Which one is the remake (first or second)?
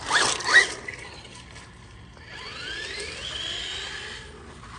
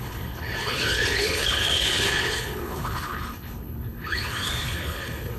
second